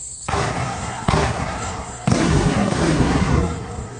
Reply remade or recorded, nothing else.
remade